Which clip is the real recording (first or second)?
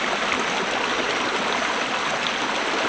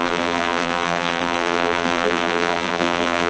first